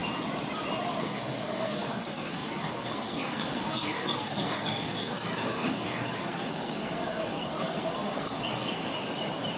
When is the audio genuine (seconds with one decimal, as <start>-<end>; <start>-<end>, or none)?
0.0-1.0; 8.9-9.6